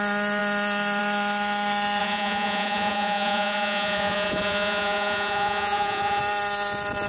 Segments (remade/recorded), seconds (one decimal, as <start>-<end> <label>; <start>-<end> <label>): 0.0-2.0 recorded; 2.0-6.2 remade; 6.2-7.1 recorded